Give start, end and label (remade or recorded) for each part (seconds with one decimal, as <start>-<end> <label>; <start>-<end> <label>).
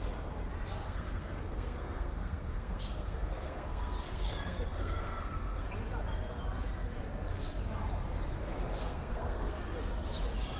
0.0-0.8 recorded; 0.8-5.7 remade; 5.7-8.8 recorded; 8.8-9.6 remade; 9.6-10.6 recorded